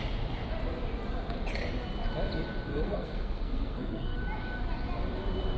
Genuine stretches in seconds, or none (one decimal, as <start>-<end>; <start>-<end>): 0.0-2.7; 4.2-5.6